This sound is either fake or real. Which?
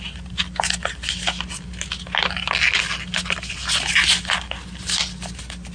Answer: real